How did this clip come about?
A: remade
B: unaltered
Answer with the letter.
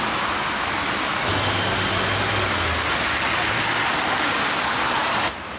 B